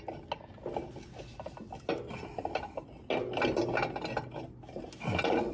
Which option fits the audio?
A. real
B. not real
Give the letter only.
A